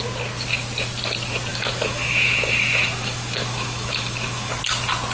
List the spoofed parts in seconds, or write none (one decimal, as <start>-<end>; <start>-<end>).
1.5-4.6

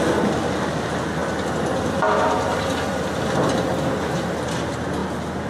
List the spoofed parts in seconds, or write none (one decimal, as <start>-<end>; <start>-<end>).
none

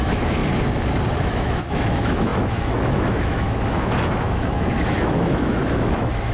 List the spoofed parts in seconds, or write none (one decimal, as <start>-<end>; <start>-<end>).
0.0-0.4; 1.2-6.3

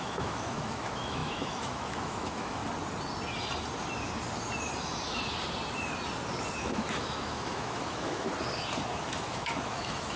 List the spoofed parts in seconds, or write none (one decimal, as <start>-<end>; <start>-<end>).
0.0-2.6; 6.6-8.3; 9.1-10.2